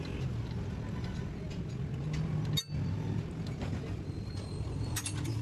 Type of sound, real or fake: real